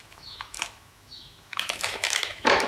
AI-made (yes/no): yes